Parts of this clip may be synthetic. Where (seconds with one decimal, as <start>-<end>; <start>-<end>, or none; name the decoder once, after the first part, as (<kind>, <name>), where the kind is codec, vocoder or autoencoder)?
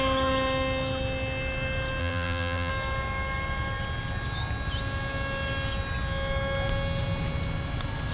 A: 2.0-2.7 (vocoder, BigVGAN v2)